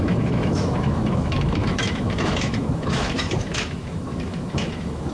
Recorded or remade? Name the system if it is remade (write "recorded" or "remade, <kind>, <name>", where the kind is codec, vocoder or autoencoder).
remade, autoencoder, DAC-VAE